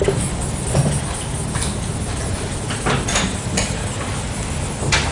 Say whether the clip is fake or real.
real